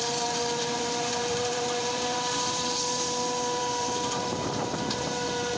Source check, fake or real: fake